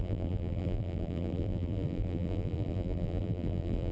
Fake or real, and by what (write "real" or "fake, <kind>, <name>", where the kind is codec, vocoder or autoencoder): fake, vocoder, BigVGAN v2